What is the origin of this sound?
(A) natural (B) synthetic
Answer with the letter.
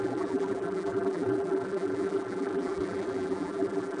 B